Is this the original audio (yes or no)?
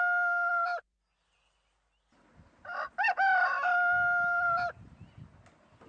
yes